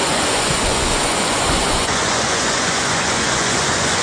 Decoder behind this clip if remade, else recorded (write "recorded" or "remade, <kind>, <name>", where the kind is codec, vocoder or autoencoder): remade, vocoder, Vocos